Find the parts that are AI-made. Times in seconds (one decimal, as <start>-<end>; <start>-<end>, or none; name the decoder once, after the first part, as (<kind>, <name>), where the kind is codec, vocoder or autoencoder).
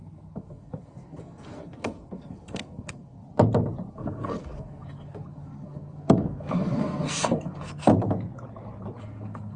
0.0-3.2 (codec, SNAC); 3.9-7.9; 9.0-9.6